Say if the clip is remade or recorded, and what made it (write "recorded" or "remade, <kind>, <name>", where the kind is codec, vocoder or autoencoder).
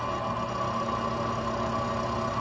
recorded